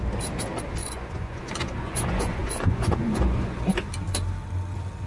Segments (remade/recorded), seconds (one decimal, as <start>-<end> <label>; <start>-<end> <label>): 0.0-0.8 recorded; 0.8-3.9 remade; 3.9-5.1 recorded